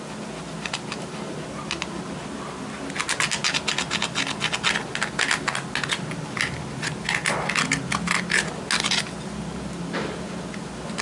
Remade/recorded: recorded